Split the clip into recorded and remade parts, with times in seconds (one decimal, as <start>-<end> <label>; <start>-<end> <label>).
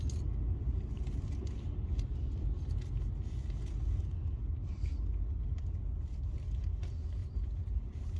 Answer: 0.0-4.0 recorded; 4.0-4.9 remade; 4.9-7.2 recorded; 7.2-8.2 remade